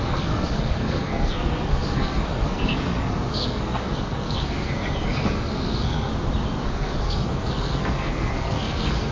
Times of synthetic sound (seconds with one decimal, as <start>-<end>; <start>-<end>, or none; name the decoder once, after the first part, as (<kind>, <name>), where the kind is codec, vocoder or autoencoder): 0.0-6.1 (codec, SNAC); 6.6-9.1